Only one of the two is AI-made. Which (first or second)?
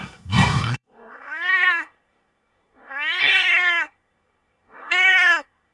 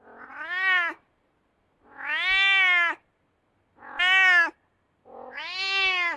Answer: first